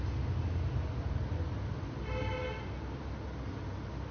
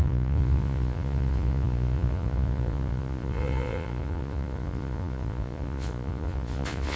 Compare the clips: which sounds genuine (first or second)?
first